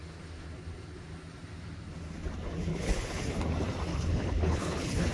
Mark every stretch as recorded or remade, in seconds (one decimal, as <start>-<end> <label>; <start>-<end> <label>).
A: 0.0-2.7 recorded; 2.7-3.2 remade; 3.2-3.9 recorded; 3.9-5.1 remade